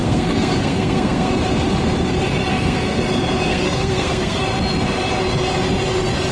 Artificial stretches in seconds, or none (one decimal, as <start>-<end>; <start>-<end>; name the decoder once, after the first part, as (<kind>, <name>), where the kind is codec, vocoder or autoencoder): 0.0-1.3 (codec, SNAC); 2.5-3.0; 3.5-4.4